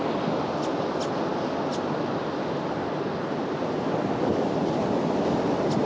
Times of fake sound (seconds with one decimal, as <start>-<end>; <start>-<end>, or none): none